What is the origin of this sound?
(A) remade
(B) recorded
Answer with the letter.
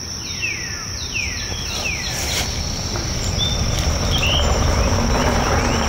B